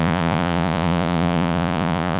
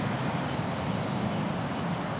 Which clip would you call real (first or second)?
second